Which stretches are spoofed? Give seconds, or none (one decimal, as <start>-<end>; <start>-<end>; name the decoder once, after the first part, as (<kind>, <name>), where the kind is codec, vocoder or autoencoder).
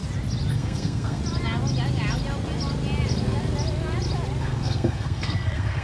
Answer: 0.5-1.2 (codec, SNAC); 4.4-5.8